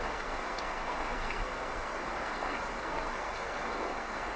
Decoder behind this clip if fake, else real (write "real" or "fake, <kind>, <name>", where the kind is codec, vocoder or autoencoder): fake, codec, SNAC